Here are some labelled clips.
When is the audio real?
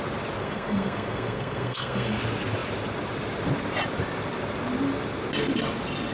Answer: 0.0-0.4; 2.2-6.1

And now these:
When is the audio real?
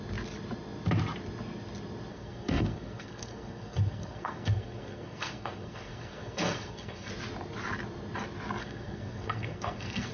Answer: 0.0-2.1; 7.1-8.6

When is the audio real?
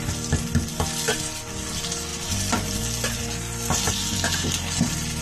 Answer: 0.0-5.2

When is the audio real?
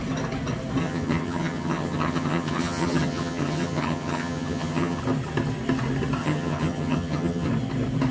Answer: 0.0-0.8; 5.0-6.2; 7.5-8.1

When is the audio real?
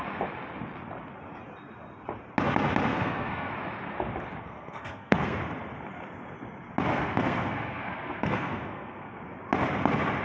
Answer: 0.0-2.9; 3.5-4.4; 5.4-6.9; 9.2-10.2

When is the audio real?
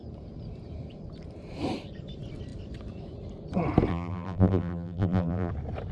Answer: 0.0-3.9; 5.5-5.9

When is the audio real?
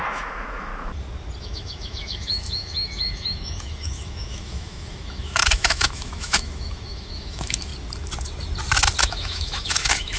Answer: 0.7-1.4; 7.7-9.0